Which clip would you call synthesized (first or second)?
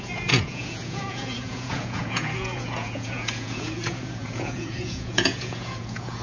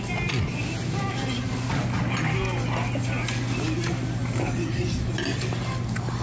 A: first